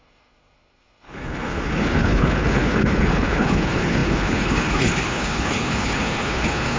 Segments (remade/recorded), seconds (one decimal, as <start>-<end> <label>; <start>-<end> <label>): 0.0-6.8 remade